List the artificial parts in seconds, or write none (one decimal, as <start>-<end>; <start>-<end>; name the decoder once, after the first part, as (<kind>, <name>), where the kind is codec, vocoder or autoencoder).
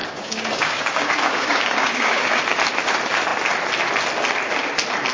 0.0-2.4 (codec, DAC)